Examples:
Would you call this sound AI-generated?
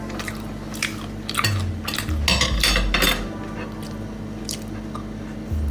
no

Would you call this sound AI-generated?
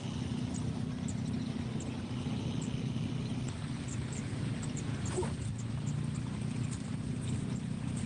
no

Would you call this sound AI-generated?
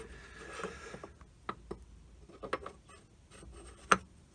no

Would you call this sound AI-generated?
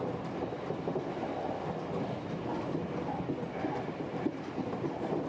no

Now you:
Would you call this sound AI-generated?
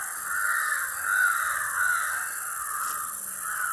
no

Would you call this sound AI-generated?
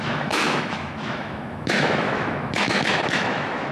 yes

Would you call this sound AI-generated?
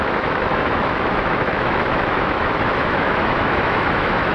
yes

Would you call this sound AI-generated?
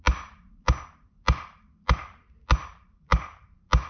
no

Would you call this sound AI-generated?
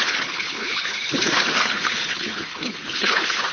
yes